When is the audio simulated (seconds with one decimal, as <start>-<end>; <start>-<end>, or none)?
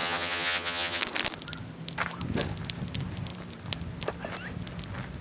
0.0-1.0